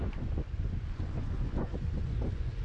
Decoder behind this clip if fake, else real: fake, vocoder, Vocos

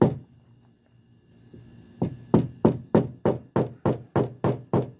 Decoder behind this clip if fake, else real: real